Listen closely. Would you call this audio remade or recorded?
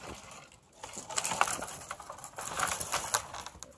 recorded